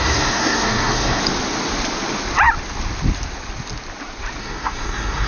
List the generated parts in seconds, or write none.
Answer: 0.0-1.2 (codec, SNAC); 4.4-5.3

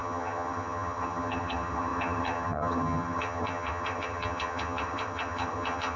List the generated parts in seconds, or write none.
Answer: 0.0-6.0 (vocoder, HiFi-GAN)

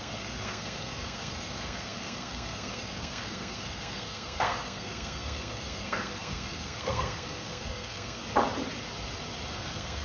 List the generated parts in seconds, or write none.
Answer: 0.0-8.2 (codec, SNAC); 9.6-10.0

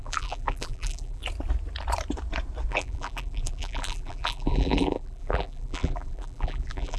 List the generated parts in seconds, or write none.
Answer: 0.0-1.2 (vocoder, BigVGAN v2); 2.7-7.0